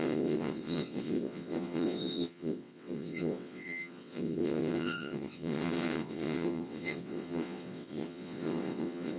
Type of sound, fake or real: fake